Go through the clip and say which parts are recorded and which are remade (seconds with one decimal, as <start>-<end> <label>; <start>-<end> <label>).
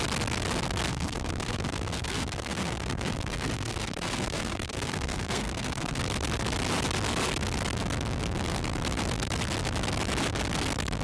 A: 0.0-0.9 recorded; 0.9-6.0 remade; 6.0-11.0 recorded